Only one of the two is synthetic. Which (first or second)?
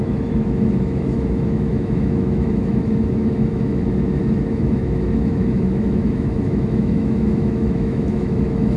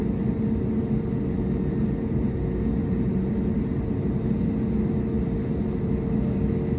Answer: first